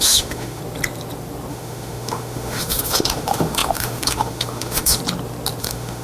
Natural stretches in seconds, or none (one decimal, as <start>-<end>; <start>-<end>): 0.6-1.5; 5.0-5.6